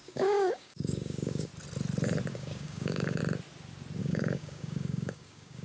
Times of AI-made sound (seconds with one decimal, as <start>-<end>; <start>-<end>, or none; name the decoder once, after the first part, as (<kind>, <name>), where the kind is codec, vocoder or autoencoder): 0.0-1.5 (codec, DAC); 2.3-3.2; 4.0-5.6